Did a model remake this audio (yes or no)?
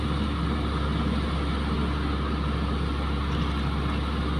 no